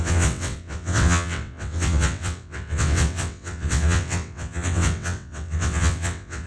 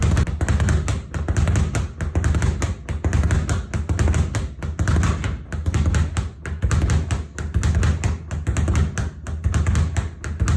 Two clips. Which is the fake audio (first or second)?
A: first